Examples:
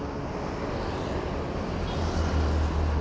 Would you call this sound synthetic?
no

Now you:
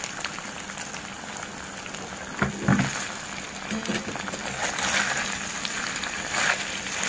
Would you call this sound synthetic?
no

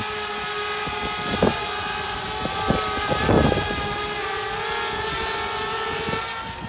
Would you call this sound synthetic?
no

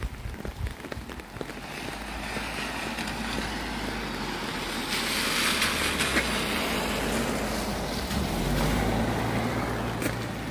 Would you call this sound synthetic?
no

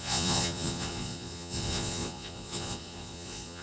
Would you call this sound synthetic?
yes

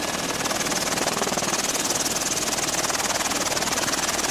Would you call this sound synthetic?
no